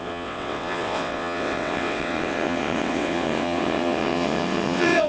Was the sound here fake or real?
fake